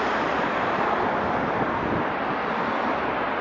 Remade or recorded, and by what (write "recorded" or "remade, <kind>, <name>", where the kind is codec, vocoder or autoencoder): recorded